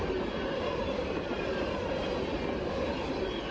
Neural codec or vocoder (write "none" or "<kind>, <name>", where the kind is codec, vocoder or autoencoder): none